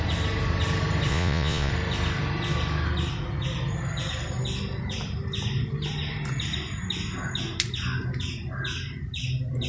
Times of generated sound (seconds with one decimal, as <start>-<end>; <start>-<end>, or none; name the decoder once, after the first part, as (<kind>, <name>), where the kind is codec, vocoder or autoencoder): 1.1-1.7 (vocoder, Vocos)